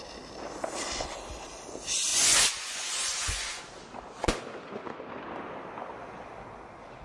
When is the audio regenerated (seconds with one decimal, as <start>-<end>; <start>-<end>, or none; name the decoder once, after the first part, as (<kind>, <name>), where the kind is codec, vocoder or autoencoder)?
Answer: 2.1-3.6 (vocoder, Vocos)